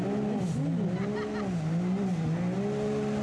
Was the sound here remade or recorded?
recorded